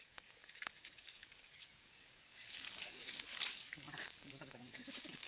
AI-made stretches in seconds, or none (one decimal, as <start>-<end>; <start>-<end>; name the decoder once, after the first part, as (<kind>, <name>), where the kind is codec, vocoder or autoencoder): 0.0-5.3 (codec, DAC)